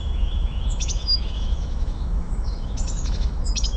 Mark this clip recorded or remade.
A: remade